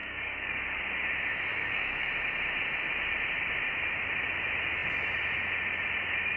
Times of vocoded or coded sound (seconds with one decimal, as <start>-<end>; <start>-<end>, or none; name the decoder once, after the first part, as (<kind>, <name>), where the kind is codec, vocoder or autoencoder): 0.0-0.8 (codec, DAC); 1.5-2.1